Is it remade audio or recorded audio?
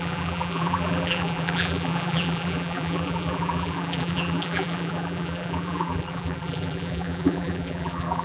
remade